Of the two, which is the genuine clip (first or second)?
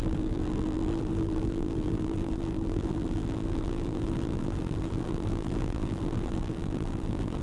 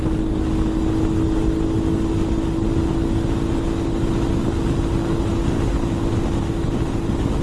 second